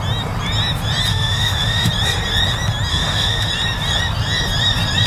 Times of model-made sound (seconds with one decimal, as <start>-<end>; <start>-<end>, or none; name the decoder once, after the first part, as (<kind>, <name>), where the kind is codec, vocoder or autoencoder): 1.1-1.9 (autoencoder, DAC-VAE); 2.9-3.5